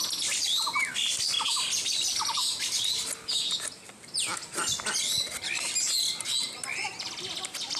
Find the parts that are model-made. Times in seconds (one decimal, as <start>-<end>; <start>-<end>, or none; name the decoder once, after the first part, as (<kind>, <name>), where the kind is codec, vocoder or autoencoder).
none